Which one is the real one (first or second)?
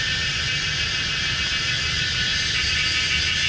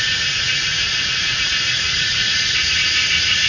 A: first